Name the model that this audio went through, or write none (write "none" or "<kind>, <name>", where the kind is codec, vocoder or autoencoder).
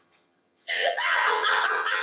vocoder, HiFi-GAN